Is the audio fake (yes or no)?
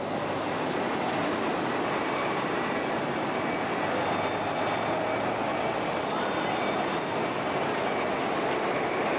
no